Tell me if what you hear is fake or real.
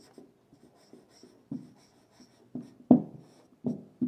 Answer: real